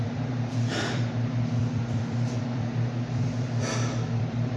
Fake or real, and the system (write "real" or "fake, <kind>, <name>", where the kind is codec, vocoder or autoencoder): fake, vocoder, BigVGAN v2